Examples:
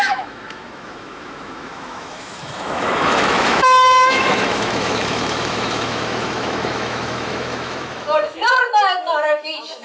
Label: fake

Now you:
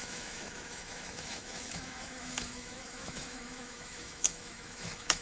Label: fake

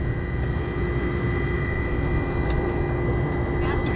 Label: real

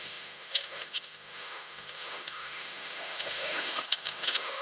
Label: fake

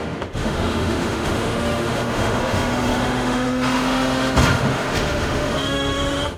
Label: fake